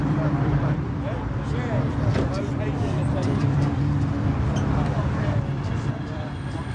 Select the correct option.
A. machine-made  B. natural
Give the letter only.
A